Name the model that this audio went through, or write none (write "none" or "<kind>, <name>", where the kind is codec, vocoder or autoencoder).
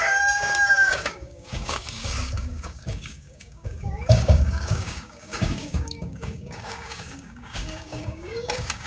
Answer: codec, DAC